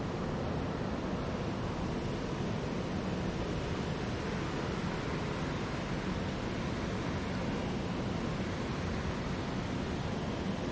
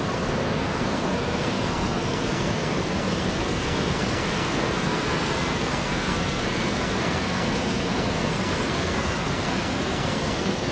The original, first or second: first